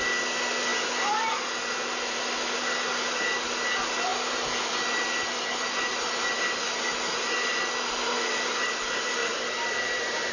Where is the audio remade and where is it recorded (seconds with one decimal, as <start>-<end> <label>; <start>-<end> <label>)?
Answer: 0.0-9.2 recorded; 9.2-10.3 remade